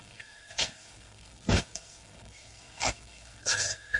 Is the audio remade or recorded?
remade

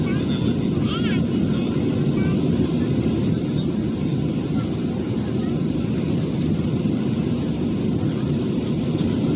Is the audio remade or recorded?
recorded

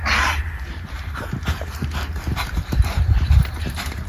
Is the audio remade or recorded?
remade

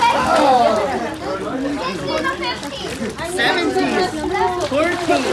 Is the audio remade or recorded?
recorded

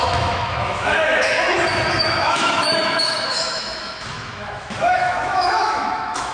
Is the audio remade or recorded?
remade